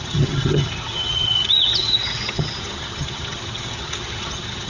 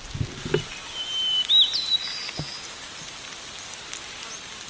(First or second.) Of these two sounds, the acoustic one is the second